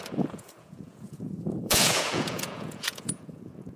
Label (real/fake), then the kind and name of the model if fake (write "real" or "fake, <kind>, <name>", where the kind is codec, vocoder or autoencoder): fake, vocoder, Vocos